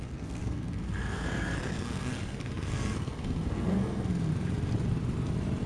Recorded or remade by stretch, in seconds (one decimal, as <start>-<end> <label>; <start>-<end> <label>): 0.0-4.3 remade; 4.3-5.7 recorded

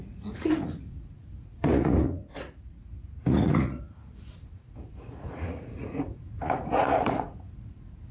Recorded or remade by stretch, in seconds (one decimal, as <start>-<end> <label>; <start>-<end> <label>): 0.0-8.1 remade

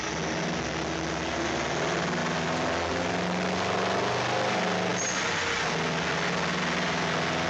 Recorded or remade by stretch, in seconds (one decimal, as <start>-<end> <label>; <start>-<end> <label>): 0.0-7.5 recorded

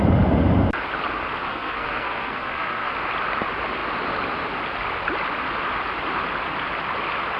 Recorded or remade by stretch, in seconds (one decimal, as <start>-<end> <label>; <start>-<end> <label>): 0.0-1.5 recorded; 1.5-2.9 remade; 2.9-7.4 recorded

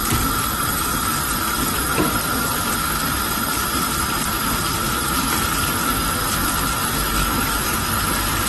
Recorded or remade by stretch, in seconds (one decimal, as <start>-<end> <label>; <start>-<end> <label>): 0.0-7.2 recorded; 7.2-7.8 remade; 7.8-8.5 recorded

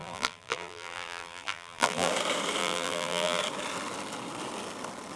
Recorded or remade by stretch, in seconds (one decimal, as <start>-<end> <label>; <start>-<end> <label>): 0.0-2.1 remade; 2.1-2.6 recorded; 2.6-3.4 remade; 3.4-5.2 recorded

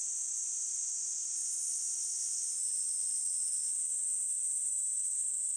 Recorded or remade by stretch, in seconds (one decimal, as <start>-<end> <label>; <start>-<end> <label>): 0.0-5.6 recorded